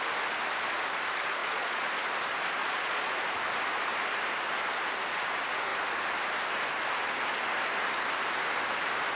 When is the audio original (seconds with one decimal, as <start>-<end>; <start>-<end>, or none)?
0.0-1.4; 1.9-2.6; 3.1-9.1